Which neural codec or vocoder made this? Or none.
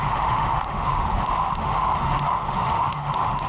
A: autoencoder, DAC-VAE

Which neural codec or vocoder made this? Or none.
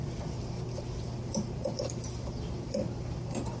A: none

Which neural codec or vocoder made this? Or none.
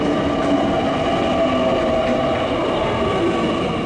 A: none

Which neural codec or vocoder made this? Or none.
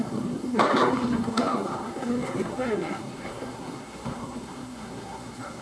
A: codec, SNAC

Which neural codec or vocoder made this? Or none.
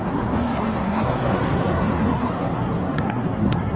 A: codec, SNAC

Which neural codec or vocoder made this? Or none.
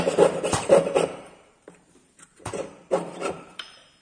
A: vocoder, BigVGAN v2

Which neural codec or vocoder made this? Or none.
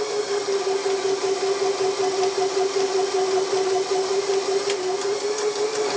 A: none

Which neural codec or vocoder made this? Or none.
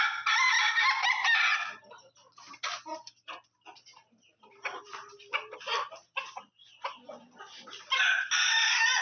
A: none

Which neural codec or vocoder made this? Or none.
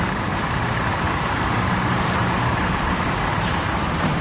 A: vocoder, BigVGAN v2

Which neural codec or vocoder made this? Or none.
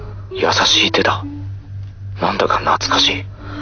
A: none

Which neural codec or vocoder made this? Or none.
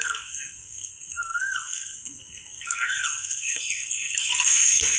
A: codec, SNAC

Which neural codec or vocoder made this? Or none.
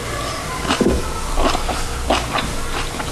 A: none